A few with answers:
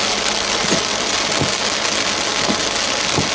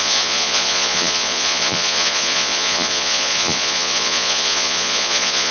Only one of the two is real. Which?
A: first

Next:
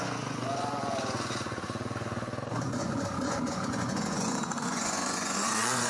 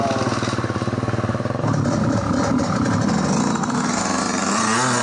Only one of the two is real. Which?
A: second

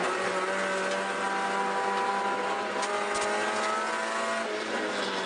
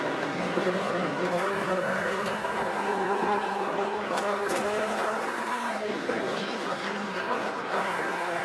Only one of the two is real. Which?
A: first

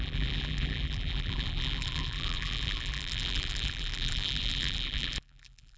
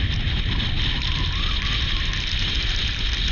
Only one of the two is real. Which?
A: second